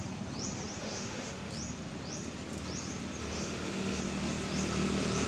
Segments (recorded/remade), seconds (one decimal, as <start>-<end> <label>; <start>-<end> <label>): 0.0-0.8 recorded; 0.8-1.5 remade; 1.5-3.2 recorded; 3.2-4.0 remade; 4.0-5.3 recorded